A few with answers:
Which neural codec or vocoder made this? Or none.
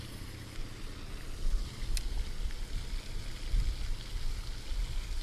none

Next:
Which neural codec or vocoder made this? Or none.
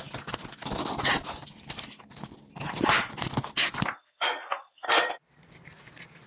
none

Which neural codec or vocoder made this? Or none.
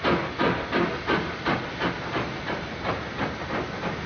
none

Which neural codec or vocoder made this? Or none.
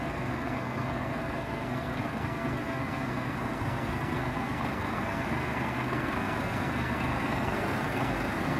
codec, SNAC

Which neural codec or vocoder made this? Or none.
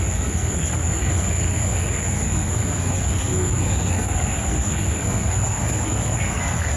codec, SNAC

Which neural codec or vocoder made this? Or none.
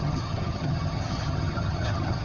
vocoder, HiFi-GAN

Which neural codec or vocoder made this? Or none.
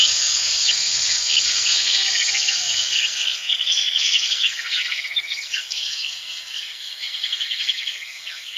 codec, SNAC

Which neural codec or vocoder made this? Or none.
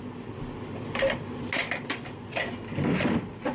none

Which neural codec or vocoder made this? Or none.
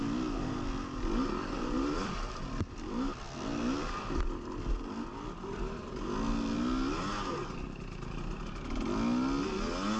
none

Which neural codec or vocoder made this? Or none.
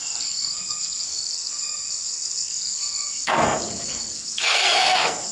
codec, SNAC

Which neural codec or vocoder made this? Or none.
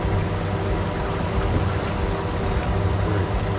none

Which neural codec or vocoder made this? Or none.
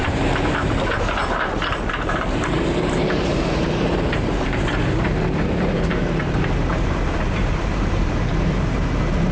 vocoder, BigVGAN v2